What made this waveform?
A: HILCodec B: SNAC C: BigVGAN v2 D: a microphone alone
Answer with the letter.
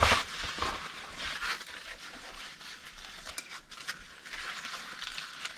D